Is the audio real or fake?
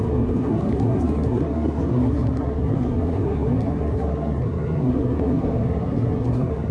fake